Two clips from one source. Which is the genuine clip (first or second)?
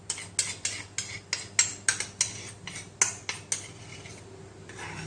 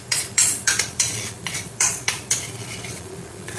first